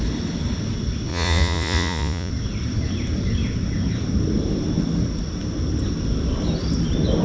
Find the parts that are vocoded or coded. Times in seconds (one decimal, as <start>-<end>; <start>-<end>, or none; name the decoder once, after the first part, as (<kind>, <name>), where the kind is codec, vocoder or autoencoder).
1.1-2.3 (vocoder, Vocos)